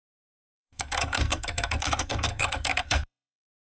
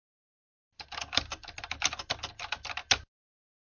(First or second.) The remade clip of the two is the first